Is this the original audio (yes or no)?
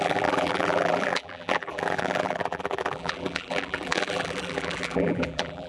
no